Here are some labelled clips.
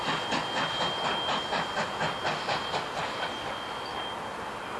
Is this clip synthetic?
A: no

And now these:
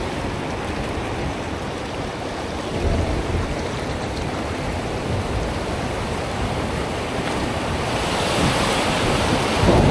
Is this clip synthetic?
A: yes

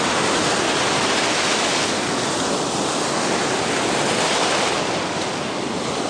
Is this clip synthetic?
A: no